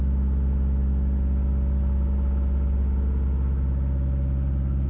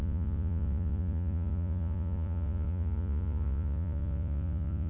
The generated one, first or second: second